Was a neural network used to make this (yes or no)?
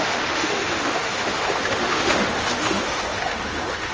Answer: yes